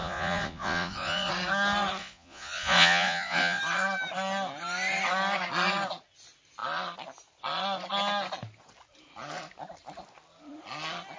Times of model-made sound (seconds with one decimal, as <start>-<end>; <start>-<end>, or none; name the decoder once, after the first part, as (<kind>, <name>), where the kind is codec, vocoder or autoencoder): 0.0-1.3 (vocoder, Vocos); 2.0-3.6